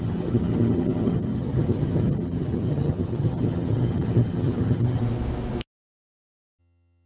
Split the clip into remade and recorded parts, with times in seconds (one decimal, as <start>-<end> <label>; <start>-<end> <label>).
0.0-5.0 remade; 5.0-6.6 recorded; 6.6-7.1 remade